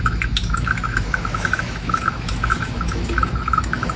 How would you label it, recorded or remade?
remade